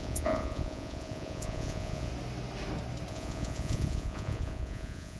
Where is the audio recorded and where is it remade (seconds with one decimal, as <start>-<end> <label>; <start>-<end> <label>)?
0.0-2.1 remade; 2.1-3.1 recorded; 3.1-5.2 remade